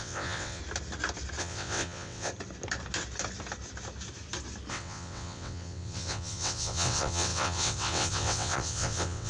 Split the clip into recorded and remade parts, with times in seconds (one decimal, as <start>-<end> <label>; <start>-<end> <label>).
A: 0.0-0.6 remade; 0.6-1.4 recorded; 1.4-2.3 remade; 2.3-4.7 recorded; 4.7-9.3 remade